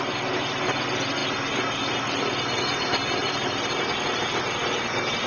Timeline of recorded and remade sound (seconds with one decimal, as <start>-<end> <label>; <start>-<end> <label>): 0.0-1.2 recorded; 1.2-4.4 remade; 4.4-5.3 recorded